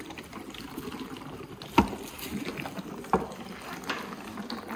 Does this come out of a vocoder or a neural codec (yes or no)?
no